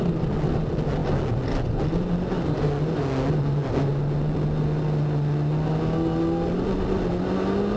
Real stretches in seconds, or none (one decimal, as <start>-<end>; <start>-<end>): 0.0-7.8